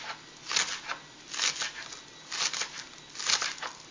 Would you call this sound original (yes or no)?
yes